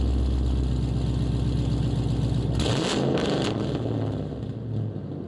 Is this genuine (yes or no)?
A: yes